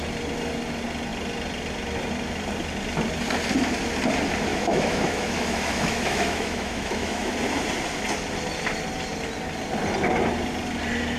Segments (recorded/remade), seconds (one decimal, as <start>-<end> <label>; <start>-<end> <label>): 0.0-4.5 recorded; 4.5-7.3 remade; 7.3-11.2 recorded